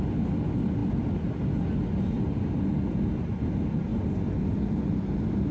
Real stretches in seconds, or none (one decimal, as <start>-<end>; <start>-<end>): 0.0-5.5